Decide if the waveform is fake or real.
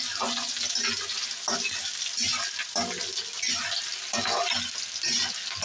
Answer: real